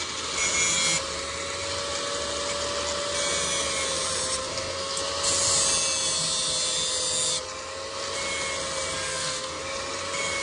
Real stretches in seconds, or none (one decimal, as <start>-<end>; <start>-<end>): 0.0-4.4; 5.0-9.1; 9.6-10.4